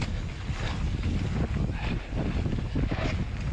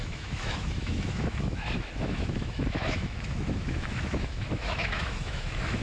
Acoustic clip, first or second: first